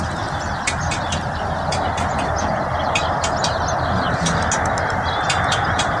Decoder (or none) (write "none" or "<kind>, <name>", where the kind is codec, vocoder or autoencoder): none